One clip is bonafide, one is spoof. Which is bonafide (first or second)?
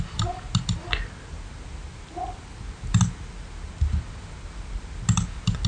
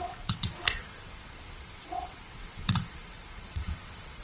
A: first